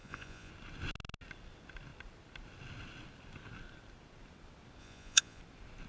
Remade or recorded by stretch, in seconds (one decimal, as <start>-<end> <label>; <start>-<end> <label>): 0.0-0.5 remade; 0.5-4.8 recorded; 4.8-5.4 remade; 5.4-5.9 recorded

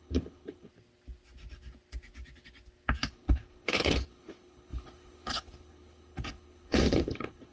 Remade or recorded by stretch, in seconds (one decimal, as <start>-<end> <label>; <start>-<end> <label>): 0.0-0.7 remade; 0.7-3.1 recorded; 3.1-7.5 remade